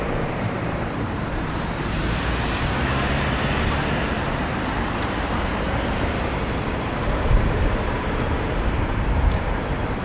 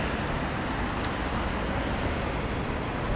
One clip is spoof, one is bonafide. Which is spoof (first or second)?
first